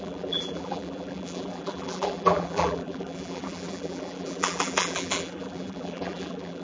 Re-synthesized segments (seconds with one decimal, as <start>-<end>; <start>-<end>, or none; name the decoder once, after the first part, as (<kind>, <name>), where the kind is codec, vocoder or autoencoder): 0.0-6.6 (vocoder, BigVGAN v2)